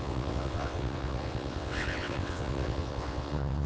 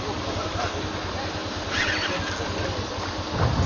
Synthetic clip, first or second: first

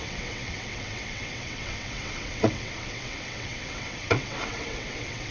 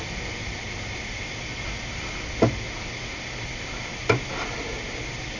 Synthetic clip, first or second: first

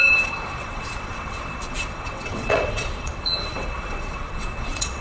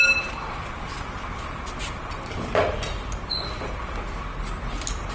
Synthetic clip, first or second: first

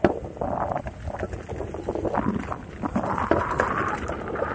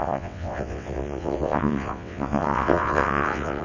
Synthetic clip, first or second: second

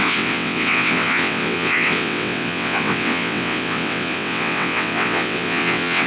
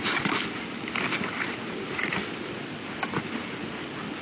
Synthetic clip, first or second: first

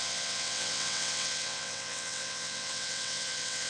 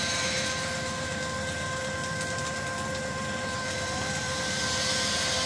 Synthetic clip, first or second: first